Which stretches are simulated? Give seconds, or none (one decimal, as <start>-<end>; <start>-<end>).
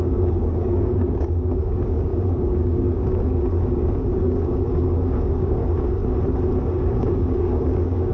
0.0-6.0; 6.6-8.1